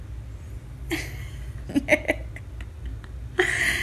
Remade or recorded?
recorded